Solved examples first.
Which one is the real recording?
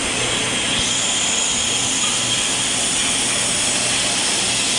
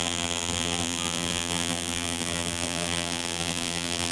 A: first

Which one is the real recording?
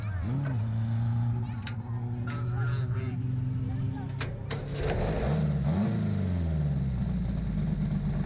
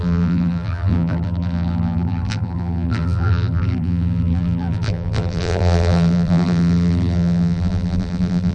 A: first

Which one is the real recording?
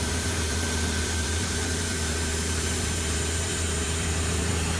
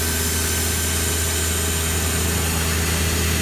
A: second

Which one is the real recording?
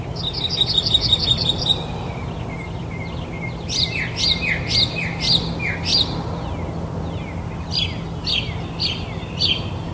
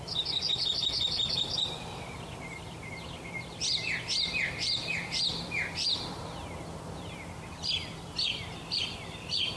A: first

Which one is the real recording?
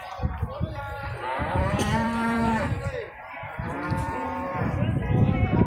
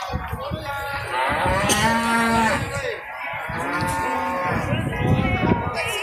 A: second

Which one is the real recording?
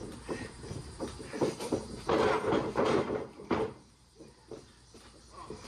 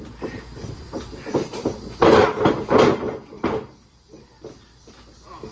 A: second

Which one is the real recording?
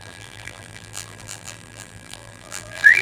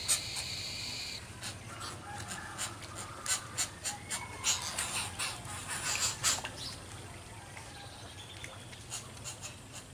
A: second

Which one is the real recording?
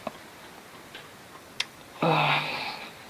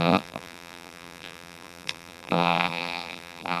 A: first